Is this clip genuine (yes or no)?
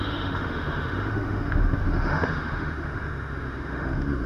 no